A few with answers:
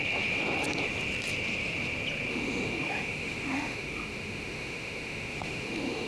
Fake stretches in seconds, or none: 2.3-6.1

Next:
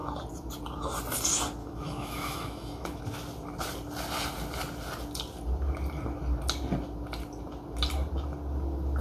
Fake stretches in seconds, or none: 1.6-3.0